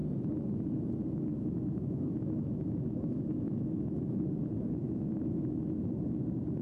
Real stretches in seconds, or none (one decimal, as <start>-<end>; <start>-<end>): 0.0-1.3; 4.2-4.8; 5.6-6.6